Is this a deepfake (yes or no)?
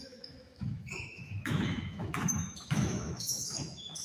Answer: yes